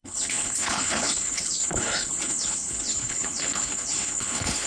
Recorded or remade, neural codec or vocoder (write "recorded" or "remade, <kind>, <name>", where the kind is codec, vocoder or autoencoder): remade, codec, HILCodec